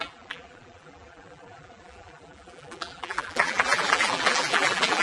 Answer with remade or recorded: remade